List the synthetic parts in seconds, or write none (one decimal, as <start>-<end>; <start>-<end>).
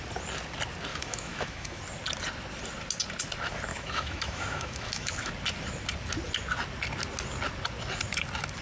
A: 0.9-1.8; 3.7-5.3